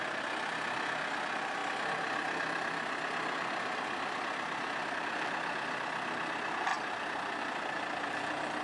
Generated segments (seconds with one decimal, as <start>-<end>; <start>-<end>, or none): none